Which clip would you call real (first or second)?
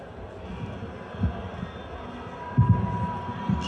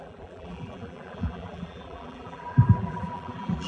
first